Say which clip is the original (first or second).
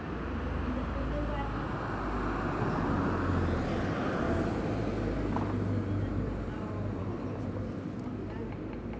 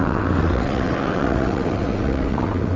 first